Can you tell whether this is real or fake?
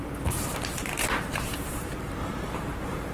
fake